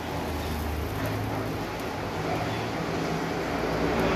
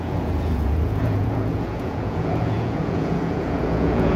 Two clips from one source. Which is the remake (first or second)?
second